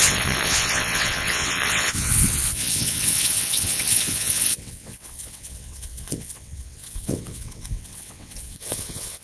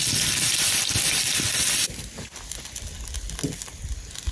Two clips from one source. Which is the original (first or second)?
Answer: second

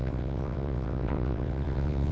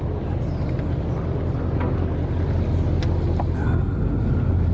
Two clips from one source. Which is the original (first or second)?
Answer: second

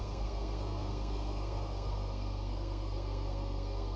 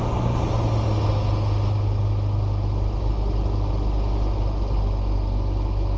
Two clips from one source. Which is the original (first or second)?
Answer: second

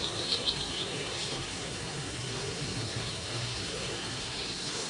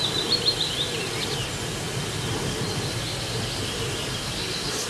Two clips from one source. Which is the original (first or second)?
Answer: second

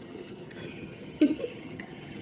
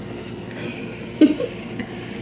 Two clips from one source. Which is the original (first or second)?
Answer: second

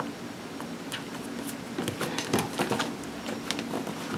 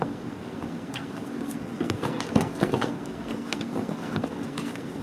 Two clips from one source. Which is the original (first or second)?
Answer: first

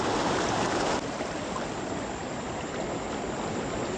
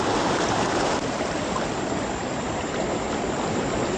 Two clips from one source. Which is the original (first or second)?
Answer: first